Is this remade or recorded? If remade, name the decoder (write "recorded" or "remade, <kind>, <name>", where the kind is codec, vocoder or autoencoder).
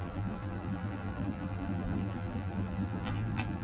remade, vocoder, BigVGAN v2